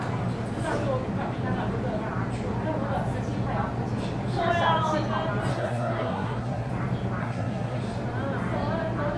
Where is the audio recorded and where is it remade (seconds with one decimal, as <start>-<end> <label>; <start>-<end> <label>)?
0.0-5.5 recorded; 5.5-6.7 remade; 6.7-7.2 recorded; 7.2-7.8 remade; 7.8-9.2 recorded